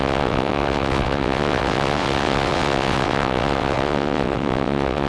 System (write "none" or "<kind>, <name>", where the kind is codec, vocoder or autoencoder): vocoder, WaveNeXt